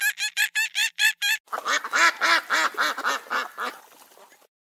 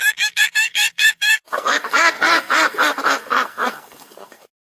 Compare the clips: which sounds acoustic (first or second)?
first